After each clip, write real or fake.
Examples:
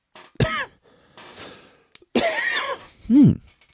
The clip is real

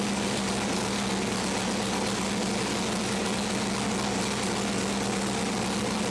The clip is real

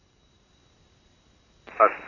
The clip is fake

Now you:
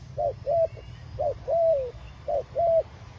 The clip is fake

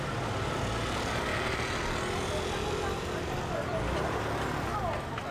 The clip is real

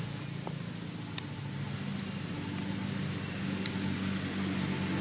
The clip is real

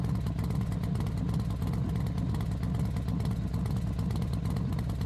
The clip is real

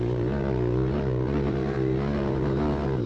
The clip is fake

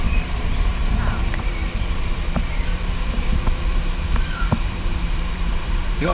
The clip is fake